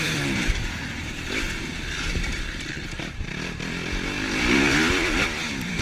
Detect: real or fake fake